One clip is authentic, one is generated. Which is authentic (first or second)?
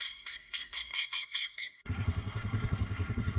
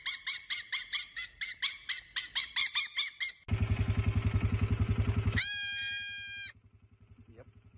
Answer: second